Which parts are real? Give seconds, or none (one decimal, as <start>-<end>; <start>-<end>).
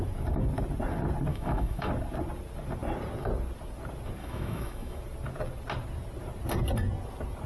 0.0-1.3; 1.9-4.2; 5.0-7.5